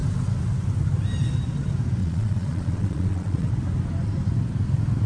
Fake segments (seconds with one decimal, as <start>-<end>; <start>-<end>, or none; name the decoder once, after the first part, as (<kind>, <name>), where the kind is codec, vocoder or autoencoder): 2.0-3.5 (vocoder, Vocos)